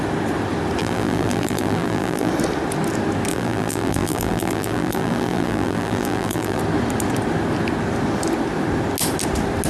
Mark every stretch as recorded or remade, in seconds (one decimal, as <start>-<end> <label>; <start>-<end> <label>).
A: 0.0-0.8 recorded; 0.8-2.3 remade; 2.3-3.3 recorded; 3.3-6.6 remade; 6.6-9.7 recorded